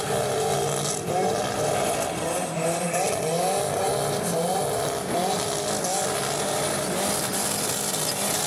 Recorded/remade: recorded